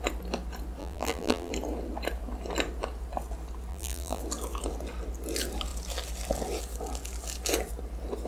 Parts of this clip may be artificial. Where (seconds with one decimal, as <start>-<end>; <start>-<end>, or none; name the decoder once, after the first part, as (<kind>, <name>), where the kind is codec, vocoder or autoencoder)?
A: 0.8-1.5 (vocoder, BigVGAN v2); 3.7-4.2